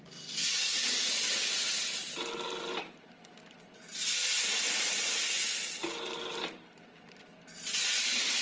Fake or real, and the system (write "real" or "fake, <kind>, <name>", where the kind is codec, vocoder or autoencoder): real